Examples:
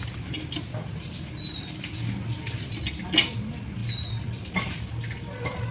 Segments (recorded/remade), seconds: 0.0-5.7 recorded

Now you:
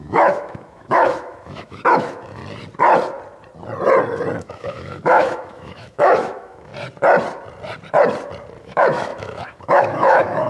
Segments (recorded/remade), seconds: 0.0-2.4 remade; 2.4-4.4 recorded; 4.4-6.7 remade; 6.7-8.6 recorded; 8.6-10.5 remade

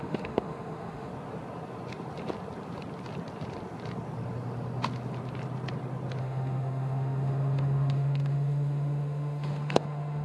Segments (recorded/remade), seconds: 0.0-1.1 remade; 1.1-6.2 recorded; 6.2-10.2 remade

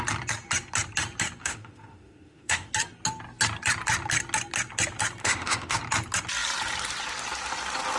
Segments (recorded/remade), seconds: 0.0-1.4 recorded; 1.4-2.7 remade; 2.7-5.2 recorded; 5.2-5.8 remade; 5.8-8.0 recorded

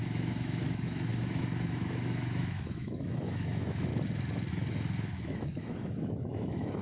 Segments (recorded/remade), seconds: 0.0-3.9 remade; 3.9-4.5 recorded; 4.5-6.8 remade

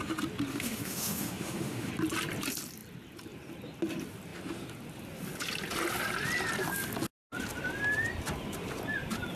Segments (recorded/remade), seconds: 0.0-0.5 recorded; 0.5-1.9 remade; 1.9-9.4 recorded

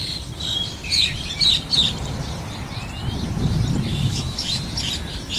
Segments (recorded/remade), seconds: 0.0-3.9 recorded; 3.9-4.6 remade; 4.6-5.4 recorded